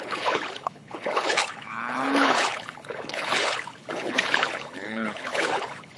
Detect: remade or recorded remade